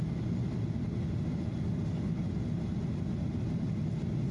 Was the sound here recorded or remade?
recorded